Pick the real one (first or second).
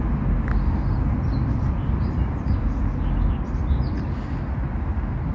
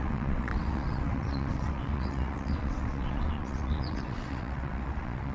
first